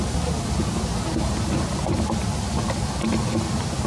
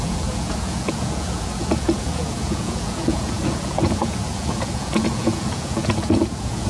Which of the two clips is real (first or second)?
first